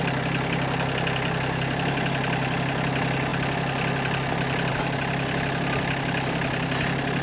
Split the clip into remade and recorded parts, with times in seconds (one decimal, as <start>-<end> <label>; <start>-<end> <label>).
0.0-7.2 recorded